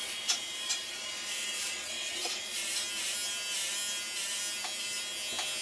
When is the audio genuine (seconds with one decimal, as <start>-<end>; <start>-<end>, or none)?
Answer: 2.6-5.6

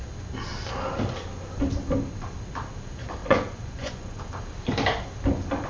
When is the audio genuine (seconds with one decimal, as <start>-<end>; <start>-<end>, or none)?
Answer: 0.0-3.2; 4.2-5.7

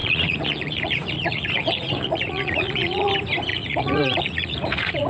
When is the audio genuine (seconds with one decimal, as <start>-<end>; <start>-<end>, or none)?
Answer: 3.1-3.5

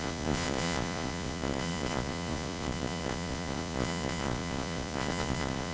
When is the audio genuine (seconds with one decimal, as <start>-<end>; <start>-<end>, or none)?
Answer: none

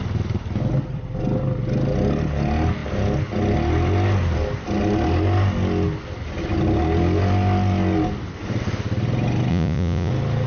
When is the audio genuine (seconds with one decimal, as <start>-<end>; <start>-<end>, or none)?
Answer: 0.0-9.5; 10.1-10.5

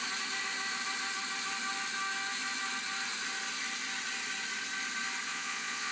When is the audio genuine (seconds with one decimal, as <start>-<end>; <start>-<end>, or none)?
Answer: 0.0-5.3